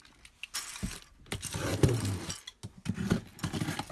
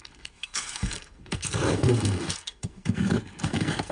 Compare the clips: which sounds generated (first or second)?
second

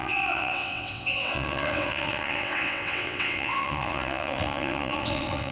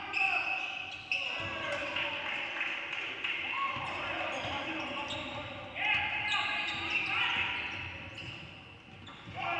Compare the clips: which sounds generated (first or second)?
first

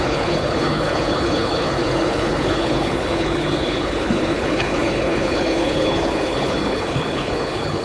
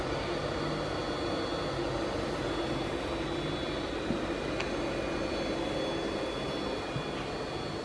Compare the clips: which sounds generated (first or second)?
first